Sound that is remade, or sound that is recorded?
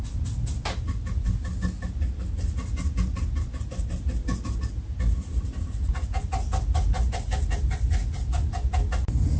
recorded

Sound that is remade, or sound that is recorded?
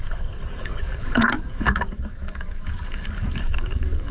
remade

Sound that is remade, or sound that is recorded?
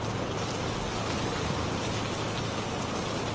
recorded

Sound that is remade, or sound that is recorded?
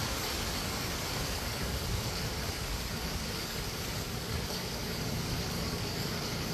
remade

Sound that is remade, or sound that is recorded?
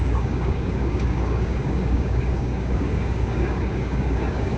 remade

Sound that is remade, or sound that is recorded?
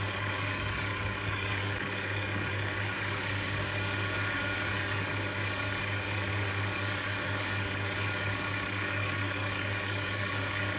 remade